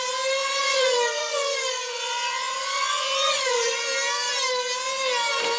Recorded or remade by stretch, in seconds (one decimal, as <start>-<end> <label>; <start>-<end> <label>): 0.0-0.4 recorded; 0.4-3.8 remade; 3.8-5.6 recorded